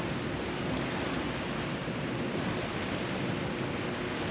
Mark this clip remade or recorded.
recorded